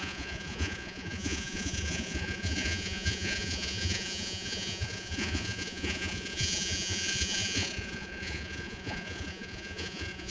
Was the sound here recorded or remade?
remade